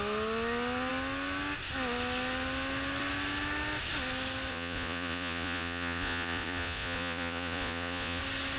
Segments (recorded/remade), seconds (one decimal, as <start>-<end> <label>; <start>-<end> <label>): 0.0-4.5 recorded; 4.5-8.2 remade; 8.2-8.6 recorded